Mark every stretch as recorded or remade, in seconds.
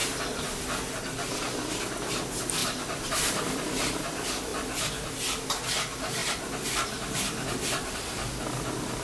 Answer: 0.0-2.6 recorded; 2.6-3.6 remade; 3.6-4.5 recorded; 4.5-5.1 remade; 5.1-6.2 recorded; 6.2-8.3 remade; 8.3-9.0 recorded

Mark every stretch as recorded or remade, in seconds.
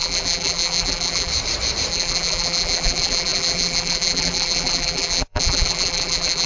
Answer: 0.0-1.3 remade; 1.3-1.9 recorded; 1.9-6.5 remade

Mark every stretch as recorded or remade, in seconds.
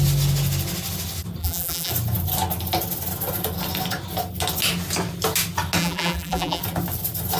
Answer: 0.0-1.4 recorded; 1.4-1.9 remade; 1.9-5.8 recorded; 5.8-6.6 remade; 6.6-7.4 recorded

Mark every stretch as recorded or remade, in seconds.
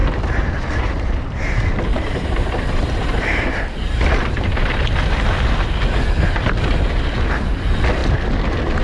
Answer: 0.0-4.6 remade; 4.6-8.8 recorded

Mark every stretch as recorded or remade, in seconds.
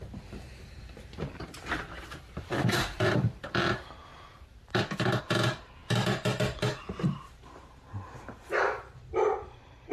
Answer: 0.0-4.1 remade; 4.1-5.2 recorded; 5.2-5.8 remade; 5.8-6.8 recorded; 6.8-9.9 remade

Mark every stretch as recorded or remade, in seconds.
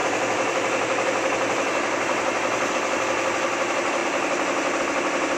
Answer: 0.0-2.7 remade; 2.7-4.0 recorded; 4.0-4.8 remade; 4.8-5.4 recorded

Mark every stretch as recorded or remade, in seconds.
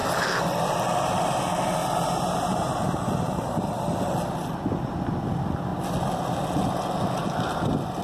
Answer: 0.0-1.8 recorded; 1.8-3.7 remade; 3.7-8.0 recorded